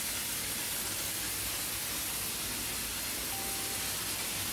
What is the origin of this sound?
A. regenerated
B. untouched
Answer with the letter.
B